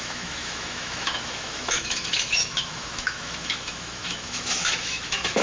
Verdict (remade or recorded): remade